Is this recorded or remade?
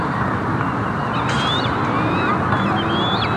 recorded